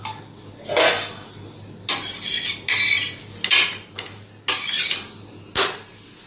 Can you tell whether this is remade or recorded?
recorded